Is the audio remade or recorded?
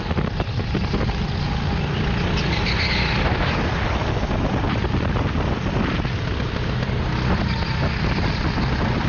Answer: recorded